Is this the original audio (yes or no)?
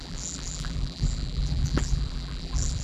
no